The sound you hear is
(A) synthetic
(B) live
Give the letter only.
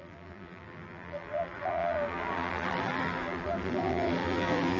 A